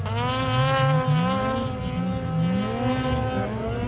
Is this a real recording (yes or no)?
yes